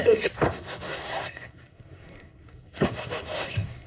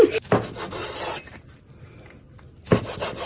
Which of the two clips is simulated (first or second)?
first